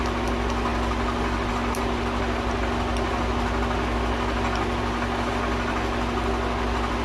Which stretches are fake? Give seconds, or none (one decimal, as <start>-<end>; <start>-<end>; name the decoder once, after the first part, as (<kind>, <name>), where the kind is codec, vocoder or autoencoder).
none